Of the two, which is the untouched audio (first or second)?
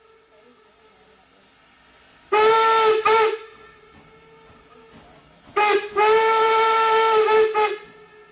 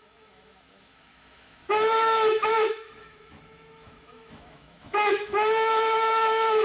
first